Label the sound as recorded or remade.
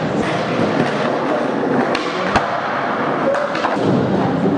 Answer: recorded